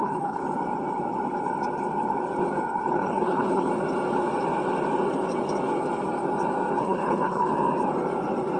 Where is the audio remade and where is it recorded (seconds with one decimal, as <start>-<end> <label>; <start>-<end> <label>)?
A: 0.0-0.4 remade; 0.4-2.9 recorded; 2.9-3.7 remade; 3.7-6.8 recorded; 6.8-7.5 remade; 7.5-8.6 recorded